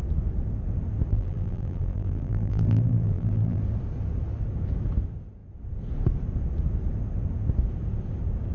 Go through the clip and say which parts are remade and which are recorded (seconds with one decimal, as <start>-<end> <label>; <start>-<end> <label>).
0.0-1.1 recorded; 1.1-3.6 remade; 3.6-8.5 recorded